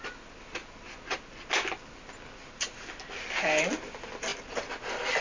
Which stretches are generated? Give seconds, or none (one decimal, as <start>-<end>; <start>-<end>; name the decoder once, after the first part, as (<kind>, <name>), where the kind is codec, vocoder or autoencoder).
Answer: none